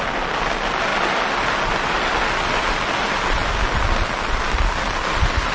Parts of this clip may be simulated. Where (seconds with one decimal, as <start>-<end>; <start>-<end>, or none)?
none